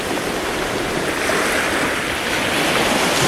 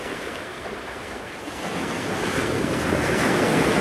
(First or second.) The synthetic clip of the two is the second